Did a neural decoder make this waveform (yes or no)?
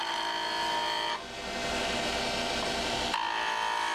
no